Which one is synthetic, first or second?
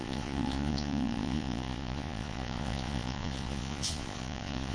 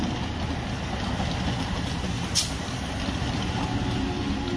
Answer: first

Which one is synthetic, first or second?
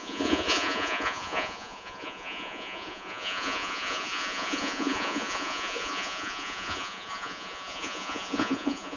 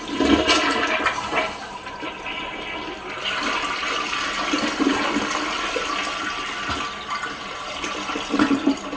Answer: first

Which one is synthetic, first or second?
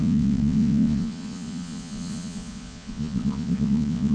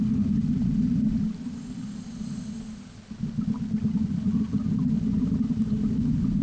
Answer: first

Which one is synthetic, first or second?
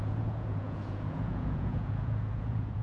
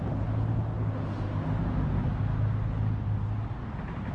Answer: first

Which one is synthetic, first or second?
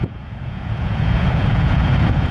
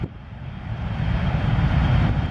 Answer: first